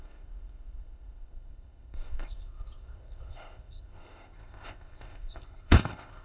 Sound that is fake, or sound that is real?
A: fake